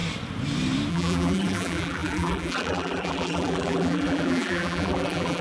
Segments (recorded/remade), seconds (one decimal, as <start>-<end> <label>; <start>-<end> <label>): 0.0-0.9 recorded; 0.9-5.4 remade